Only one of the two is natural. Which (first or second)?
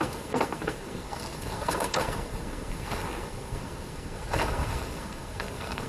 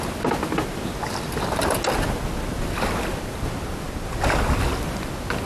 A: second